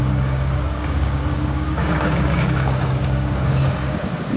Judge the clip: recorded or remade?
remade